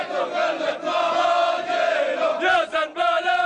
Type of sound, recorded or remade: recorded